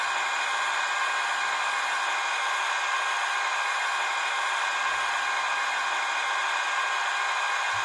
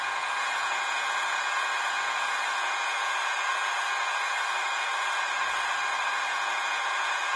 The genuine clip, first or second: first